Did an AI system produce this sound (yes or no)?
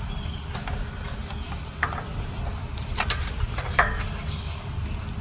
no